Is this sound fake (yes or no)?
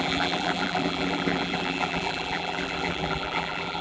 yes